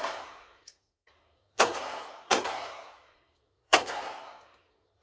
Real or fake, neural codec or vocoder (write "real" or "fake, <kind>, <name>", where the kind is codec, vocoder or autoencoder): fake, codec, SNAC